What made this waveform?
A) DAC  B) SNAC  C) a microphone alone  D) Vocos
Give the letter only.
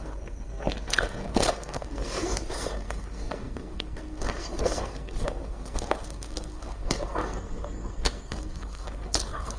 B